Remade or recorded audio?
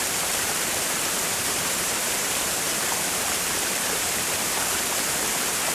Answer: remade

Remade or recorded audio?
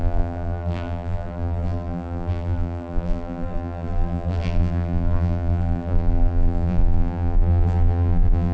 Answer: remade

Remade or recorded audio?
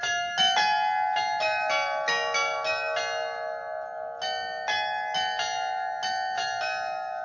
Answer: recorded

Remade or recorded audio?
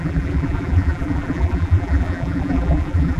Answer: remade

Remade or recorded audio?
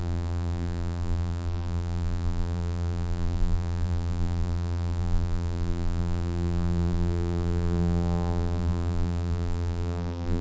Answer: remade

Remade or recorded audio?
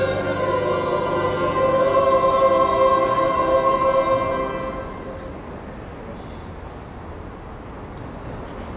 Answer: recorded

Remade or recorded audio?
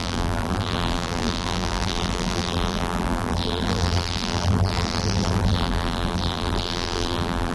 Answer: remade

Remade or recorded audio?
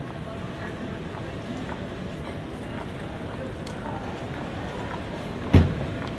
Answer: recorded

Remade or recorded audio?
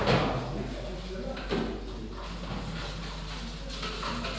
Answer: recorded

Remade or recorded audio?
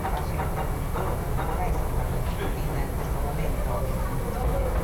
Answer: recorded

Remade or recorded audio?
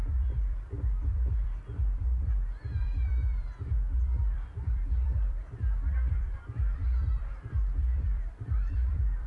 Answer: remade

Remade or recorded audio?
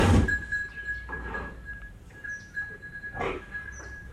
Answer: remade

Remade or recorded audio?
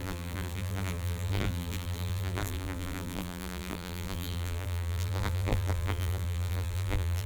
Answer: remade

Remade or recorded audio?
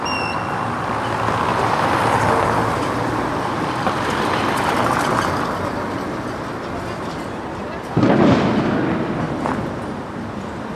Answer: recorded